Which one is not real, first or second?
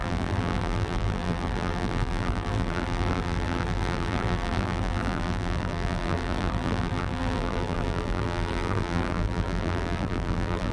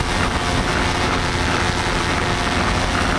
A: first